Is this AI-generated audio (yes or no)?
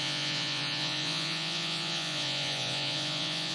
yes